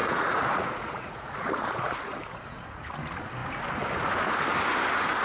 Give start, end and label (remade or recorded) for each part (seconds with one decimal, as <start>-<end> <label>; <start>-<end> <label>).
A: 0.0-2.9 remade; 2.9-5.2 recorded